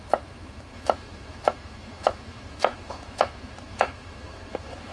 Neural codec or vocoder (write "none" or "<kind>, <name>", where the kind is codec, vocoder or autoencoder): autoencoder, DAC-VAE